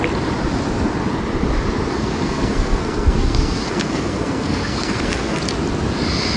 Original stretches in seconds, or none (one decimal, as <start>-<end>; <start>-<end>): 0.0-1.9; 5.4-6.4